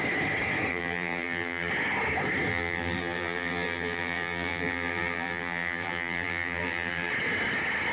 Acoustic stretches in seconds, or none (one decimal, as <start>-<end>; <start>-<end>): 0.0-0.7; 1.7-2.5; 7.1-7.9

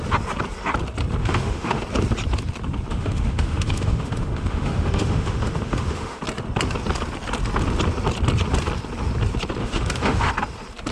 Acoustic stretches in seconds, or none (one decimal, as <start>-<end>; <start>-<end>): 0.0-1.2; 1.8-2.9; 6.2-9.6; 10.3-10.9